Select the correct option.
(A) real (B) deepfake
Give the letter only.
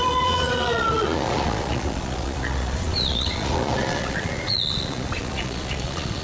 B